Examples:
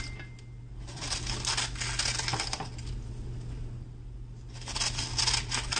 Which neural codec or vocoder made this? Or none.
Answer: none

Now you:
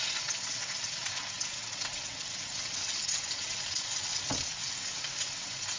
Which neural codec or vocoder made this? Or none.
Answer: vocoder, WaveNeXt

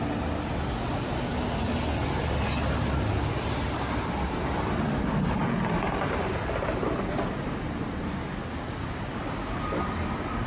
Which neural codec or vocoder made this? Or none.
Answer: none